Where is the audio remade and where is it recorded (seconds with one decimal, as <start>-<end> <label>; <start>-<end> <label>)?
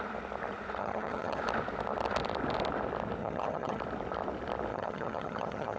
0.0-0.8 recorded; 0.8-1.4 remade; 1.4-3.2 recorded; 3.2-3.8 remade; 3.8-4.7 recorded; 4.7-5.8 remade